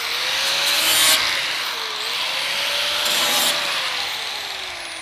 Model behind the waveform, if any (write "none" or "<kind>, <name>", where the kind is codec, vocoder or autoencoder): none